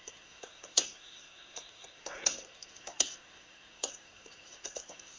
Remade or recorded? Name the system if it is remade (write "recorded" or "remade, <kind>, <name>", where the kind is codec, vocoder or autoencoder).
remade, codec, SNAC